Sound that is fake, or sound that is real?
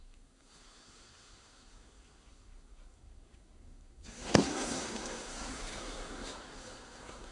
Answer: fake